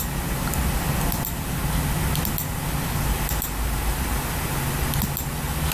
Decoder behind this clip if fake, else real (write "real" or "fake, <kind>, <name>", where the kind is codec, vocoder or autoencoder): real